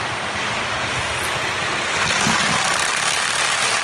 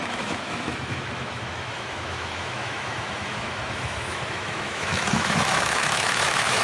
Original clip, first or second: first